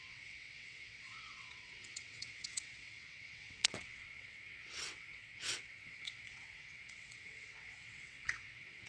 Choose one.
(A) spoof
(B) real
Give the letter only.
A